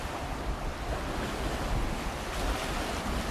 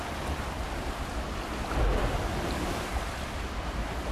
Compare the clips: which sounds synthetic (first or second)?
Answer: second